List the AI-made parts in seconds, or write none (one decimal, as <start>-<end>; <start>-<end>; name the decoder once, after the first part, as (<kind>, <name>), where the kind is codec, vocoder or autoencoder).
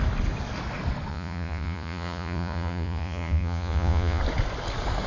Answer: 1.1-4.2 (vocoder, Vocos)